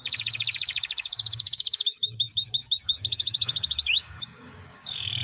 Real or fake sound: fake